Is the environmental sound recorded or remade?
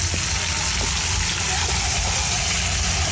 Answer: recorded